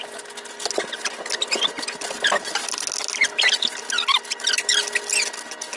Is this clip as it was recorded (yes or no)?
yes